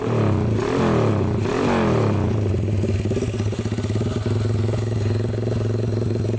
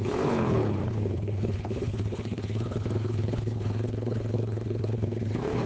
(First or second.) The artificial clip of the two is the second